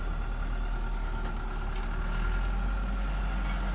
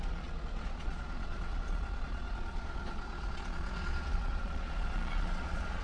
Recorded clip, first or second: first